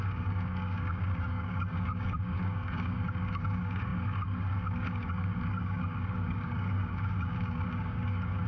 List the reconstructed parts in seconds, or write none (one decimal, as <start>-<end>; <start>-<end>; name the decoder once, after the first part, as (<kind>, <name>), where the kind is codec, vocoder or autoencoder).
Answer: 0.0-8.5 (codec, DAC)